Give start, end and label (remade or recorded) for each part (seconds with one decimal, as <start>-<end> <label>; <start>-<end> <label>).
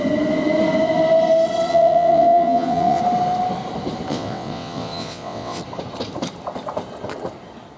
0.0-1.7 recorded; 1.7-3.0 remade; 3.0-4.1 recorded; 4.1-5.6 remade; 5.6-7.8 recorded